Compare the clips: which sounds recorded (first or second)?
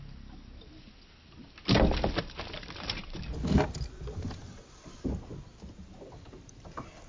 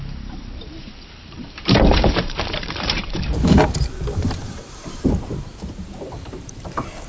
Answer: first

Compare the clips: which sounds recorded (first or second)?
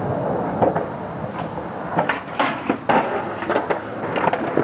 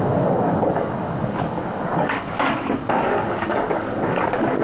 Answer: first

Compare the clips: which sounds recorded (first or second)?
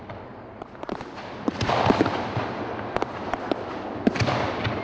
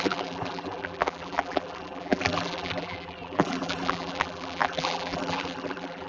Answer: first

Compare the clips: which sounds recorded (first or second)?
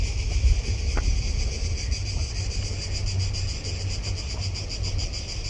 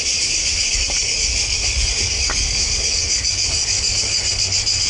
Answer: first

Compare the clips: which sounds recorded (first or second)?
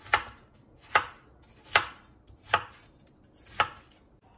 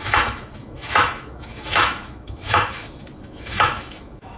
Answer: first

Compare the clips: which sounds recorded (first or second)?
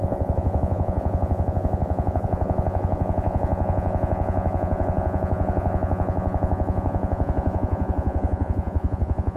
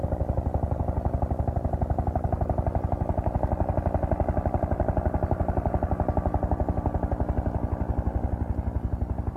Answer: second